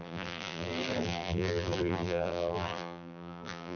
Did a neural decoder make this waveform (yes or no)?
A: yes